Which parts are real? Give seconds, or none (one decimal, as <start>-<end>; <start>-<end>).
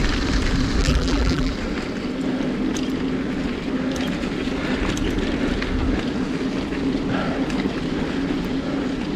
0.0-0.8; 1.5-9.2